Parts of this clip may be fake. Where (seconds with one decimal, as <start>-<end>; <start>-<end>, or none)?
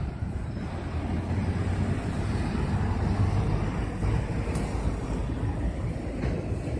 1.4-2.5